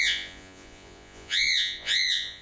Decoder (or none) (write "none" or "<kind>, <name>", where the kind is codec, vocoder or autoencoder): vocoder, Vocos